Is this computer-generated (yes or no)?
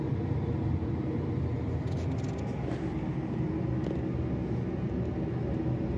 no